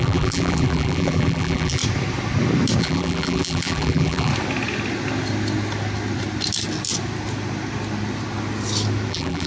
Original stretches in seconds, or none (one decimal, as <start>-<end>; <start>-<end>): 1.8-2.8; 4.3-9.1